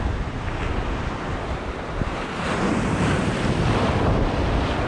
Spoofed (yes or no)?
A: no